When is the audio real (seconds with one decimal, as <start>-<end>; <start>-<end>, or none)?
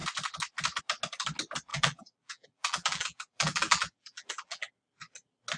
0.0-1.7; 4.7-5.6